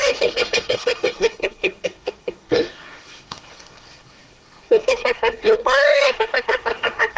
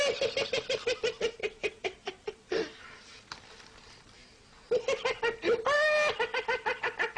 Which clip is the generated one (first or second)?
first